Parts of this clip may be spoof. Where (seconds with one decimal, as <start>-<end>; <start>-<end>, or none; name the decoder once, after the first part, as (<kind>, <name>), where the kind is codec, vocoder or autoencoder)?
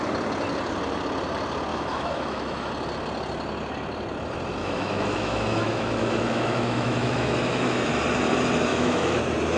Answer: 1.7-2.7 (autoencoder, DAC-VAE); 4.6-7.9; 8.7-9.2